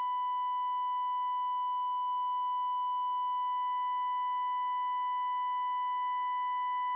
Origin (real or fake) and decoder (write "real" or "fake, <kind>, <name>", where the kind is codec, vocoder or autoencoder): real